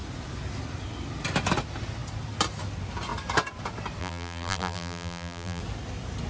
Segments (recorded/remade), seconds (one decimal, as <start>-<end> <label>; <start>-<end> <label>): 0.0-4.0 recorded; 4.0-5.6 remade; 5.6-6.3 recorded